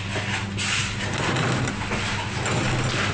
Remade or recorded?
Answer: recorded